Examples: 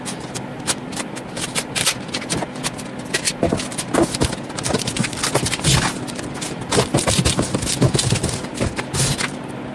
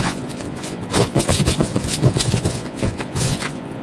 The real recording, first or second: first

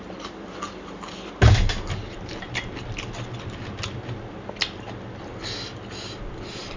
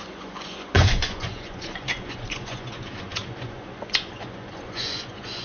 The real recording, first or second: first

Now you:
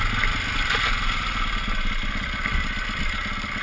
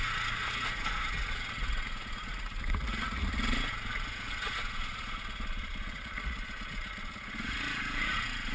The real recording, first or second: first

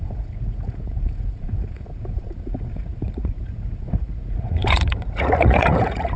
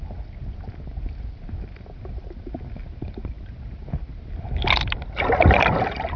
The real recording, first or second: second